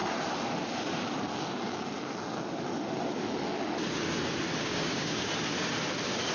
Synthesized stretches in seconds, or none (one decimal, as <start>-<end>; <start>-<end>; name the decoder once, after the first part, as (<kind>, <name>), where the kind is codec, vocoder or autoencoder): 4.6-5.3 (codec, DAC)